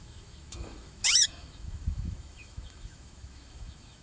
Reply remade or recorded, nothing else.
remade